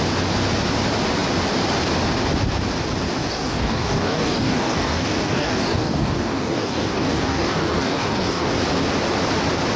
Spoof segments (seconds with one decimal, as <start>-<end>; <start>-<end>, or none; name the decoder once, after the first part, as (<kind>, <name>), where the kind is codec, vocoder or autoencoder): 3.3-8.5 (codec, DAC)